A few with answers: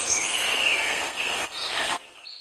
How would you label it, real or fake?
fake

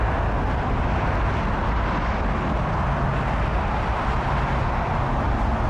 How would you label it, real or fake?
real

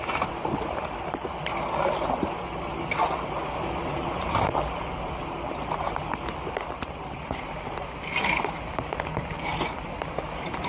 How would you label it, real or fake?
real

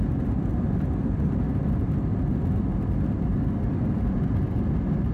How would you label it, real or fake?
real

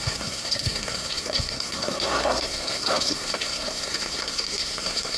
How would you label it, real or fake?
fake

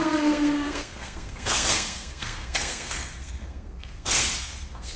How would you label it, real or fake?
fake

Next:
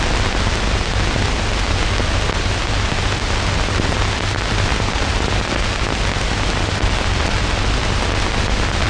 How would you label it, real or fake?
real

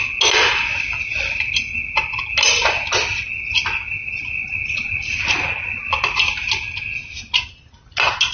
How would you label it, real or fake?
real